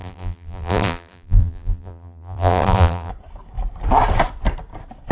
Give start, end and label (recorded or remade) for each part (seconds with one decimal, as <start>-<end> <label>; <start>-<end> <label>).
0.0-3.1 remade; 3.1-5.1 recorded